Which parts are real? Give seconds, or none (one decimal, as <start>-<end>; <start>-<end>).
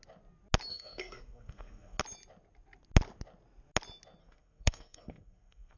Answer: 0.0-0.7; 2.0-4.2